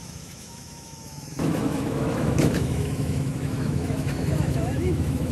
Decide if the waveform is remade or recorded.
remade